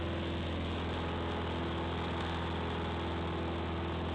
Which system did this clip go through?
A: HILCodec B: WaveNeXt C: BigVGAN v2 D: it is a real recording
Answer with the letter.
D